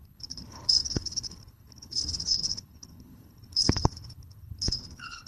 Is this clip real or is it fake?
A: fake